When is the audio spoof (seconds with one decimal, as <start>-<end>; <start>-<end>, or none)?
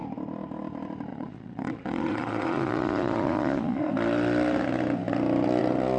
1.1-3.9